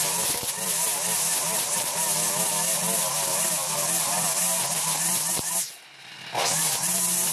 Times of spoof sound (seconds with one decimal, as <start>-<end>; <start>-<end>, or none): none